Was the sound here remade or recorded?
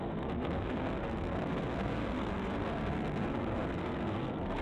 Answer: remade